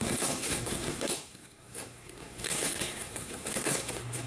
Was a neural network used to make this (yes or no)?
yes